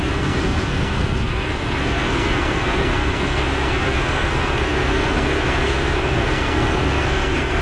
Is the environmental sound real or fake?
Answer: fake